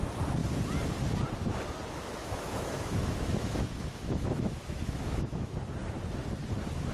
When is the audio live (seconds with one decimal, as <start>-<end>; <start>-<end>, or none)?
0.0-2.2; 5.6-6.9